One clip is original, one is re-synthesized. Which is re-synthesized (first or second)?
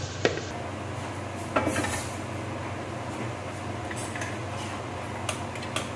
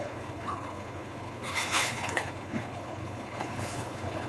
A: second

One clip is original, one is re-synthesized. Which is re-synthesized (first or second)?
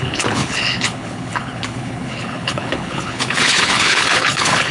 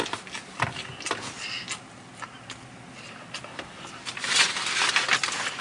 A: first